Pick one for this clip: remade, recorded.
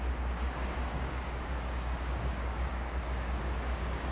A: remade